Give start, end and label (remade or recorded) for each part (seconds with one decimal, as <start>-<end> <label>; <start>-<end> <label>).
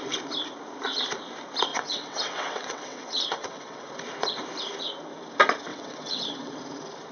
0.0-1.7 recorded; 1.7-3.9 remade; 3.9-5.7 recorded; 5.7-6.6 remade; 6.6-7.1 recorded